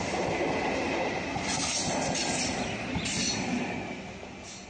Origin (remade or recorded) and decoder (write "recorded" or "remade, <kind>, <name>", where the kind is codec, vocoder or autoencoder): recorded